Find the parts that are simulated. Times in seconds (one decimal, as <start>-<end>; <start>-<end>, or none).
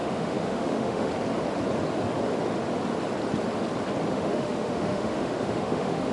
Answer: 0.0-1.1; 4.1-6.1